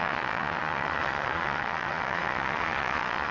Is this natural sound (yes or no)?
no